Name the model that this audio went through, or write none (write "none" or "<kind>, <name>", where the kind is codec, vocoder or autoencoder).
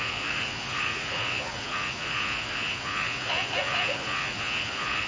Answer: vocoder, Vocos